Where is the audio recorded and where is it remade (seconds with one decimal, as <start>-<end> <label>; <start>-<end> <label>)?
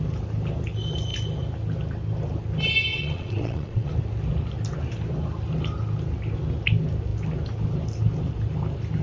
0.0-2.9 recorded; 2.9-3.9 remade; 3.9-9.0 recorded